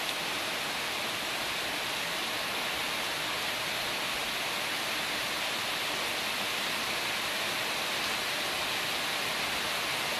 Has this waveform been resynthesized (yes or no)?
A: no